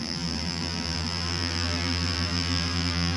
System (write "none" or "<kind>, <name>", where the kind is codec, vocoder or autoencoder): vocoder, BigVGAN v2